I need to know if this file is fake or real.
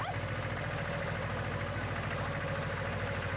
real